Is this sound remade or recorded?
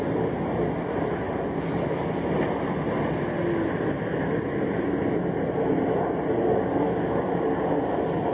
recorded